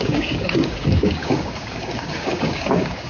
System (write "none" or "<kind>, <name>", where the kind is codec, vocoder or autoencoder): codec, DAC